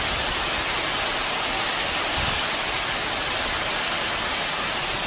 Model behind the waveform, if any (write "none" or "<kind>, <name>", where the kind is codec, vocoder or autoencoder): none